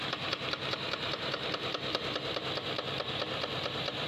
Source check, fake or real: fake